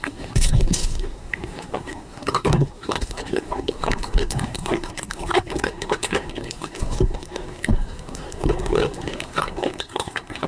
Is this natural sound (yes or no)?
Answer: no